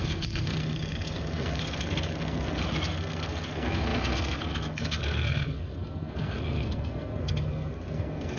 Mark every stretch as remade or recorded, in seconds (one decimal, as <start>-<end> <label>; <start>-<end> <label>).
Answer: 0.0-8.4 remade